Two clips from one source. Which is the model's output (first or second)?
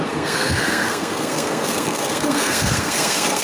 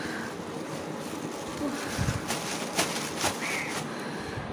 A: first